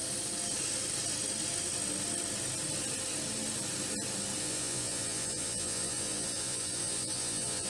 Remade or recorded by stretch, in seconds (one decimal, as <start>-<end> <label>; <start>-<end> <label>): 0.0-4.4 recorded; 4.4-7.7 remade